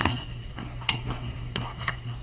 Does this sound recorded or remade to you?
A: remade